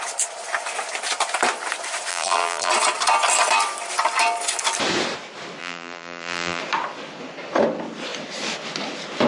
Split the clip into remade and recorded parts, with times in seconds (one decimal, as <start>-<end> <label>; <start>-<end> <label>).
0.0-2.1 recorded; 2.1-2.7 remade; 2.7-5.6 recorded; 5.6-6.6 remade; 6.6-9.3 recorded